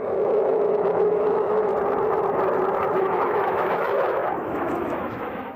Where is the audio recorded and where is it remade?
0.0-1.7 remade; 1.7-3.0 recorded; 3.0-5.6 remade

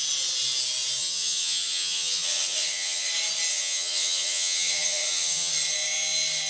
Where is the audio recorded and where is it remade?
0.0-1.0 recorded; 1.0-3.1 remade; 3.1-3.5 recorded; 3.5-5.5 remade; 5.5-6.5 recorded

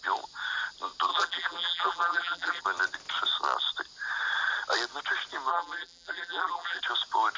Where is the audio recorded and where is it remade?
0.0-1.1 recorded; 1.1-2.6 remade; 2.6-5.5 recorded; 5.5-6.8 remade; 6.8-7.4 recorded

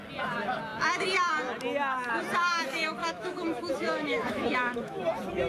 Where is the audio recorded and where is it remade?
0.0-3.0 recorded; 3.0-5.0 remade; 5.0-5.5 recorded

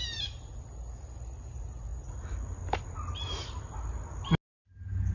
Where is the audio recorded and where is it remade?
0.0-5.1 recorded

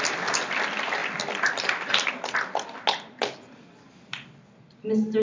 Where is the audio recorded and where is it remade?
0.0-5.2 recorded